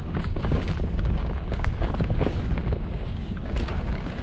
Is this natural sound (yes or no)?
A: no